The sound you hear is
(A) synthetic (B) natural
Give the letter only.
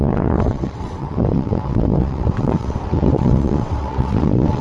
A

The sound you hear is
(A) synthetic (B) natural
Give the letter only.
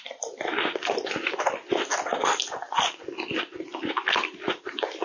B